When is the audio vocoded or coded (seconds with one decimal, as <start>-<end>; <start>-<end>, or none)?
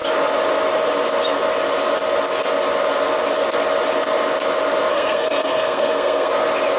4.9-6.3